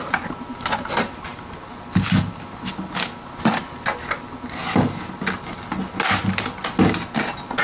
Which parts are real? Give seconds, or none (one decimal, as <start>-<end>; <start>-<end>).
0.0-7.6